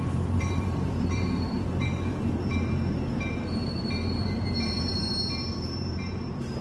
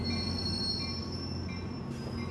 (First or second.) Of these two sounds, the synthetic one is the first